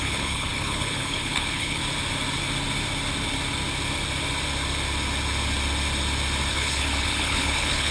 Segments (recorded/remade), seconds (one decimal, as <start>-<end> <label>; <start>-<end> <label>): 0.0-1.8 remade; 1.8-6.5 recorded; 6.5-7.9 remade